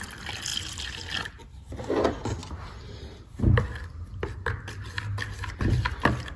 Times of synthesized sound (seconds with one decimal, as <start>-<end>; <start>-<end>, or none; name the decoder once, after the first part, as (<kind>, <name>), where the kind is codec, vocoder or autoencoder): none